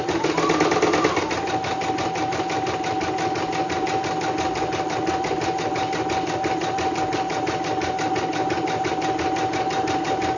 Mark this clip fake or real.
real